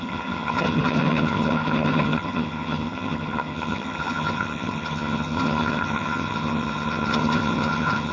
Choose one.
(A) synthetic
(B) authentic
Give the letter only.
A